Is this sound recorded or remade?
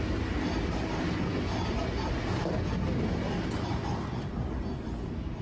recorded